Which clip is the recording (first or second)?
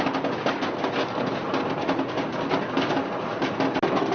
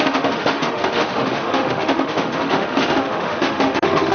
first